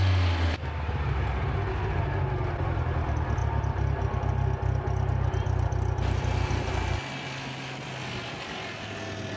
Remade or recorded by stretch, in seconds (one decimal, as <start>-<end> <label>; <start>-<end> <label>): 0.0-9.4 recorded